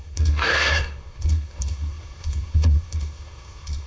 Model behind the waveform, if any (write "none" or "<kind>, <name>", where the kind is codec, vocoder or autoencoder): codec, SNAC